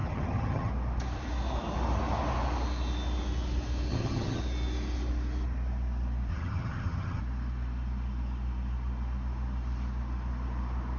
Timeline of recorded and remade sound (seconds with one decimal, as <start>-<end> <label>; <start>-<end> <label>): 0.0-0.7 remade; 0.7-3.9 recorded; 3.9-4.4 remade; 4.4-6.3 recorded; 6.3-7.2 remade; 7.2-11.0 recorded